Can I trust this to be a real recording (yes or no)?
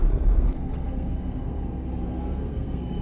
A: no